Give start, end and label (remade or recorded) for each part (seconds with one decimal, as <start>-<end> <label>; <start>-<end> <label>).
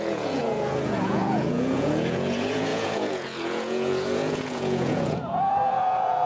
0.0-6.3 remade